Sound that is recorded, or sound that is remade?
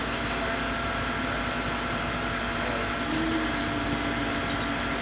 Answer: recorded